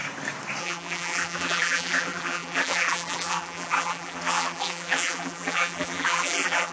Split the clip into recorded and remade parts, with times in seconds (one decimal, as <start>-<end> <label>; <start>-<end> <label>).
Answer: 0.0-0.6 recorded; 0.6-6.7 remade